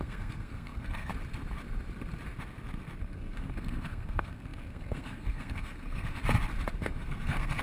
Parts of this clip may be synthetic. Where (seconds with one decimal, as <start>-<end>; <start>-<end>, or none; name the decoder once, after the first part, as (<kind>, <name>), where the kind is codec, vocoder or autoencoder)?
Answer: 0.0-1.1 (codec, SNAC); 3.0-6.2; 6.8-7.6